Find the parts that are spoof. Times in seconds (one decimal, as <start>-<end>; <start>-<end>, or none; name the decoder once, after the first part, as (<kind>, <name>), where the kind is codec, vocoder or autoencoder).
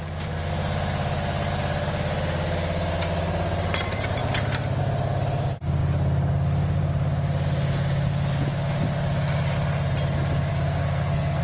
10.5-11.4 (codec, SNAC)